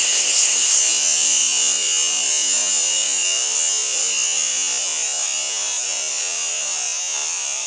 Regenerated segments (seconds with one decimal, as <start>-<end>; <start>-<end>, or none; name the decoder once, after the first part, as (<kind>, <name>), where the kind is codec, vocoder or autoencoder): 0.0-0.8 (codec, SNAC)